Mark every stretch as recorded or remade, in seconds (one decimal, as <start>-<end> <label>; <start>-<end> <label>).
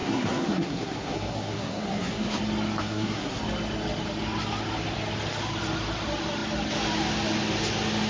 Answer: 0.0-2.4 remade; 2.4-2.8 recorded; 2.8-3.4 remade; 3.4-8.1 recorded